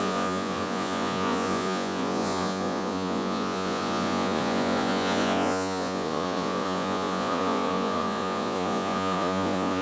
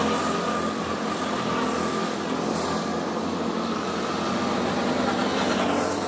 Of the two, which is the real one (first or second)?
second